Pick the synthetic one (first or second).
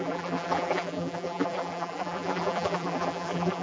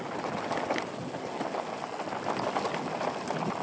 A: first